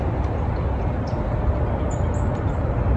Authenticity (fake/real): real